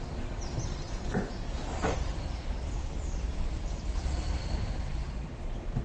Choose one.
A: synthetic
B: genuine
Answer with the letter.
A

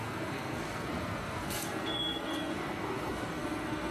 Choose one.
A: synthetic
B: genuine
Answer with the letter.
A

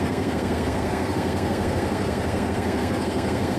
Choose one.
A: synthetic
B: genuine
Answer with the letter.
A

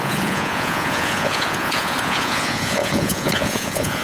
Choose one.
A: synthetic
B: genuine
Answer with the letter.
A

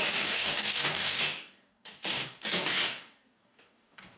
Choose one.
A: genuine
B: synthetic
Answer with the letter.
B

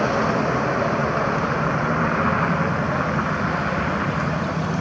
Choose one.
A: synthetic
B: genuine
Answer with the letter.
B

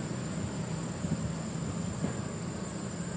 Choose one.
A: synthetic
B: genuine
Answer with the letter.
B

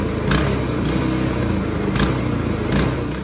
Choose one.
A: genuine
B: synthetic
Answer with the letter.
A